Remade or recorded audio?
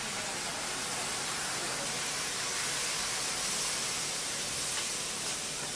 recorded